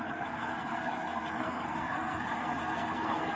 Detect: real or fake fake